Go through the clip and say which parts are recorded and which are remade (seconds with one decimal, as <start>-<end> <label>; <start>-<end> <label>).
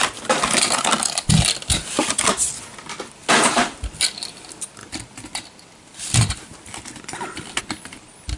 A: 0.0-4.8 recorded; 4.8-7.6 remade; 7.6-8.4 recorded